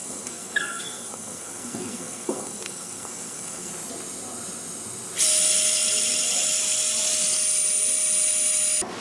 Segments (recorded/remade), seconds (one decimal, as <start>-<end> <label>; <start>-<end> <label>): 0.0-3.7 remade; 3.7-9.0 recorded